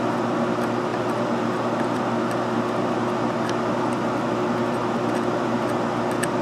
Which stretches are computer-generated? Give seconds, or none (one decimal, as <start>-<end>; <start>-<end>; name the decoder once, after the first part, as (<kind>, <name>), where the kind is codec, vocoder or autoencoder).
none